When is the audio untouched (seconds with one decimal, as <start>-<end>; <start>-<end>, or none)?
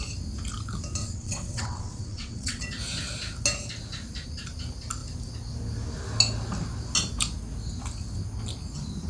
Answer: 0.0-1.0; 2.6-9.1